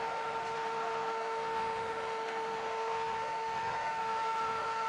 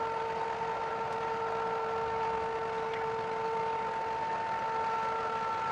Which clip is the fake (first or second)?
first